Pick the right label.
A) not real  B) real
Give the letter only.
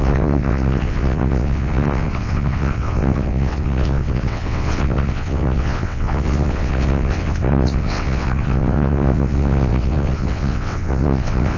A